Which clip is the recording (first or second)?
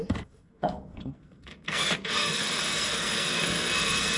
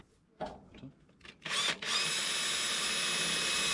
second